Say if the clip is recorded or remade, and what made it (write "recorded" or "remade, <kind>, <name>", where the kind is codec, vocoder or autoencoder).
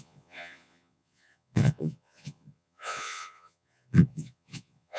remade, vocoder, Vocos